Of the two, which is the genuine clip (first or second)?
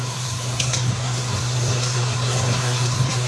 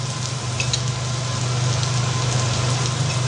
second